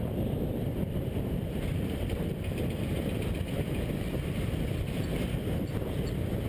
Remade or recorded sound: remade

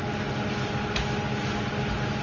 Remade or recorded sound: recorded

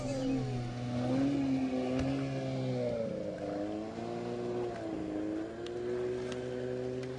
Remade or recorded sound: recorded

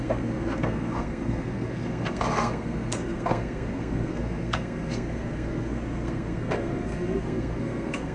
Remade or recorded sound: remade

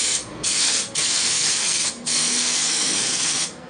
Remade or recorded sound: remade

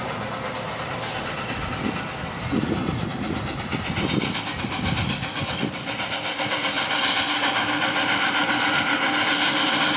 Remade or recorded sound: recorded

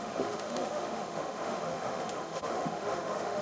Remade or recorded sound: remade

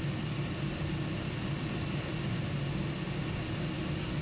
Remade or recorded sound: recorded